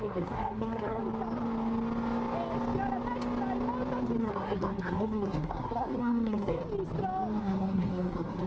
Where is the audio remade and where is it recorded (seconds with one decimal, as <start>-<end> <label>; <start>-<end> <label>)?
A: 0.0-1.0 remade; 1.0-4.2 recorded; 4.2-6.6 remade; 6.6-7.4 recorded; 7.4-8.5 remade